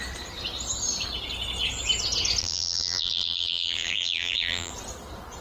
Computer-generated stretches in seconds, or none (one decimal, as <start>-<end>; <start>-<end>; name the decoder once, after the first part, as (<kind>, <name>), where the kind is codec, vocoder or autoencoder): 2.4-4.7 (vocoder, BigVGAN v2)